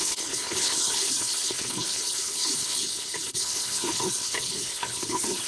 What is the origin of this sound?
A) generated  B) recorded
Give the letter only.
A